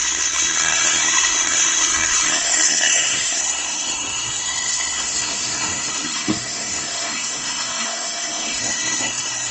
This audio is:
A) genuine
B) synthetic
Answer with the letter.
B